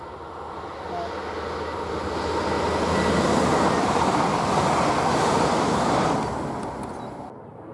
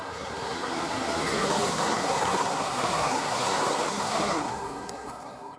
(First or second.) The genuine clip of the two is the first